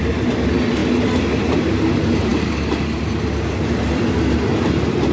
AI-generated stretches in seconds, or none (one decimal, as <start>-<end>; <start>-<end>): none